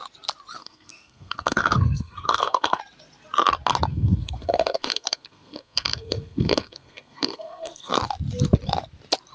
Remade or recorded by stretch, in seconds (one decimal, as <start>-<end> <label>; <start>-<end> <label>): 0.0-0.6 recorded; 0.6-2.8 remade; 2.8-3.9 recorded; 3.9-7.9 remade; 7.9-9.3 recorded